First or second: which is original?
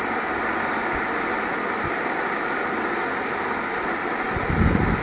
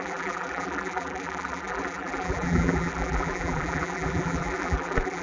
first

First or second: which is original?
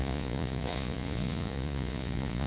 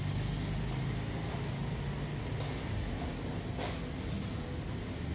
second